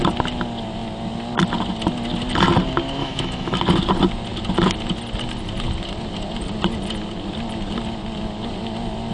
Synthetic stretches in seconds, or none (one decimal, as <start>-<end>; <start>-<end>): 3.0-3.6